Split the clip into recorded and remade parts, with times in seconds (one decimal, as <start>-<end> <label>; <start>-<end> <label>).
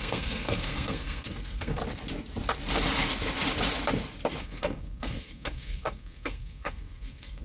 0.0-1.8 remade; 1.8-4.4 recorded; 4.4-7.4 remade